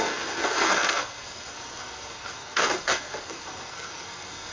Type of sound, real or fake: fake